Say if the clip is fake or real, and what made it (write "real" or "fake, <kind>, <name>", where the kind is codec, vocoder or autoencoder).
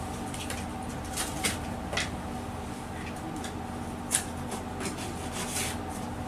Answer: real